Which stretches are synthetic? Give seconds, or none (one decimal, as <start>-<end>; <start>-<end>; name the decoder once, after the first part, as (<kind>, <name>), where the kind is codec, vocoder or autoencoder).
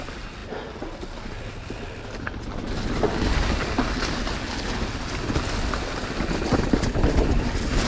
none